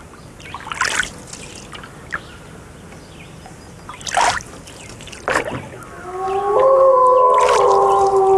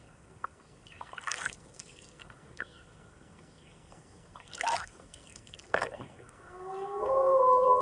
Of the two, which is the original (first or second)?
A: first